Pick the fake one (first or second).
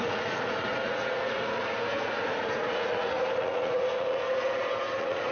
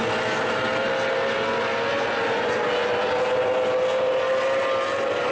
first